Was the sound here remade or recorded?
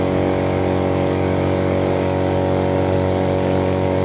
remade